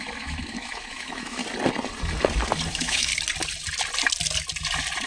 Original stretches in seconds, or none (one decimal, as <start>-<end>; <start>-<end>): 1.4-2.7; 3.1-5.1